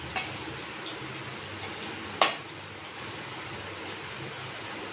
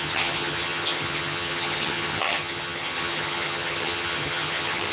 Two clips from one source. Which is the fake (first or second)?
second